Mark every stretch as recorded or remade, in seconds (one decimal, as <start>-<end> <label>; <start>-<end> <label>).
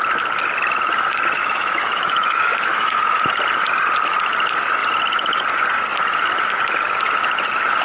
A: 0.0-1.4 recorded; 1.4-3.2 remade; 3.2-7.8 recorded